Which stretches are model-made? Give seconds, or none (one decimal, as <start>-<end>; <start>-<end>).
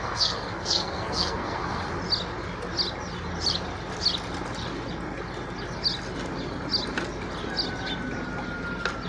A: 0.0-1.9